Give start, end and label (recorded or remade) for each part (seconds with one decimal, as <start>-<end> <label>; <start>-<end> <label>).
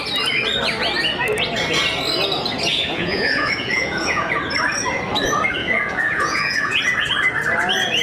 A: 0.0-2.7 recorded; 2.7-4.3 remade; 4.3-5.6 recorded; 5.6-6.8 remade; 6.8-8.0 recorded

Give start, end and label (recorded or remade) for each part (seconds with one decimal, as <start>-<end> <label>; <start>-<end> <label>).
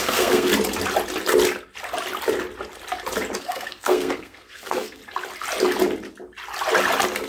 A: 0.0-0.5 remade; 0.5-3.4 recorded; 3.4-5.0 remade; 5.0-7.3 recorded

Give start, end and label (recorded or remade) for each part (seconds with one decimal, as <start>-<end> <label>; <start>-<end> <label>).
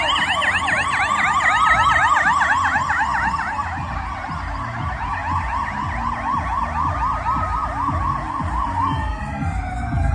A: 0.0-10.1 recorded